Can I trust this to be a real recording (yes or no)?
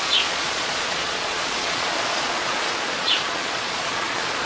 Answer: no